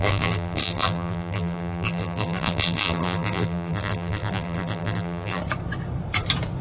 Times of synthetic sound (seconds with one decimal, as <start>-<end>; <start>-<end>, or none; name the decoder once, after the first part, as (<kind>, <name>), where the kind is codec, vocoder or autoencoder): 0.0-5.4 (vocoder, BigVGAN v2)